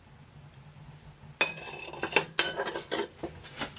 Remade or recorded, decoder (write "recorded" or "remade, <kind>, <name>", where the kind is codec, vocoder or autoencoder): recorded